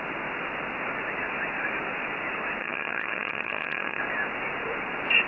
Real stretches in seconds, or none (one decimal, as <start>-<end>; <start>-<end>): 0.0-2.6; 4.0-5.3